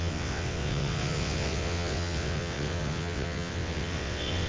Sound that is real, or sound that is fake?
fake